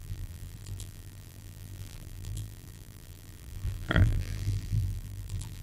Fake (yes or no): yes